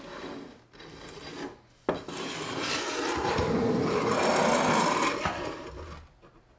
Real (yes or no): yes